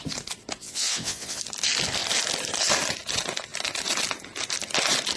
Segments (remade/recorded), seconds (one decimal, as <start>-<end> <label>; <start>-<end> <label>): 0.0-0.6 recorded; 0.6-1.4 remade; 1.4-5.2 recorded